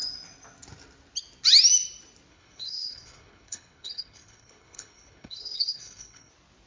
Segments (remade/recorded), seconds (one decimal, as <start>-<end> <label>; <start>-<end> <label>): 0.0-2.3 recorded; 2.3-6.3 remade; 6.3-6.7 recorded